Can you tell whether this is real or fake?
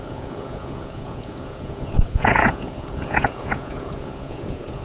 fake